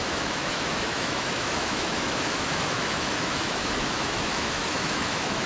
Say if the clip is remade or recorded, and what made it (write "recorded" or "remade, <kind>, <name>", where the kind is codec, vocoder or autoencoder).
remade, autoencoder, DAC-VAE